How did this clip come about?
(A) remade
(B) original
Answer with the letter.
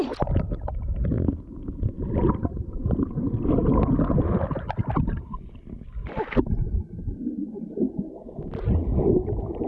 B